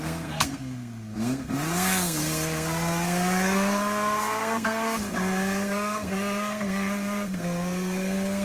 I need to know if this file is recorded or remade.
remade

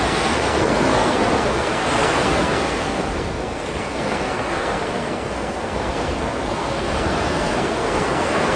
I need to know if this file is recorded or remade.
remade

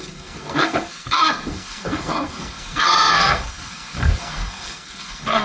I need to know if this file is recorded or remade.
remade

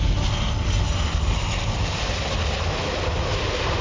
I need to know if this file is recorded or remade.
recorded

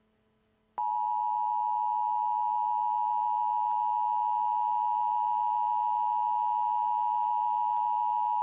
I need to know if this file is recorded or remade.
recorded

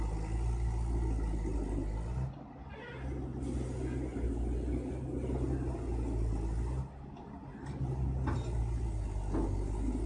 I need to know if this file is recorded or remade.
recorded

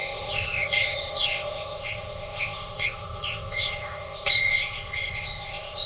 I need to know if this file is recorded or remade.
remade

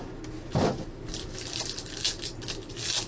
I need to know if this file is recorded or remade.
recorded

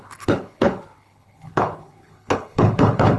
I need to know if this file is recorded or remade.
remade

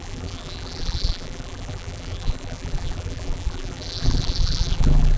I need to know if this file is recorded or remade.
remade